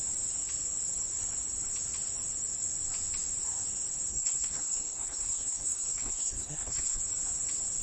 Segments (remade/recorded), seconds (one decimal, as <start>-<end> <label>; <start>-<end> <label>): 0.0-4.1 recorded; 4.1-7.0 remade; 7.0-7.8 recorded